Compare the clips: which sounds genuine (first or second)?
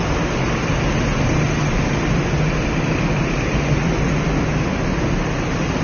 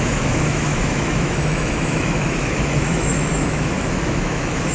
first